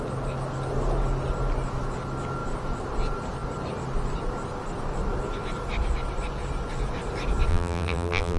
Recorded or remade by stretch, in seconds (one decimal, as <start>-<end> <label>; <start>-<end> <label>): 0.0-7.5 recorded; 7.5-8.4 remade